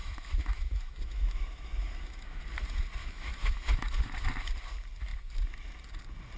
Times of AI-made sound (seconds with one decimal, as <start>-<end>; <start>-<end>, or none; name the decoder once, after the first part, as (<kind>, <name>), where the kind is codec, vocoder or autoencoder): 0.0-2.4 (autoencoder, DAC-VAE); 3.0-4.1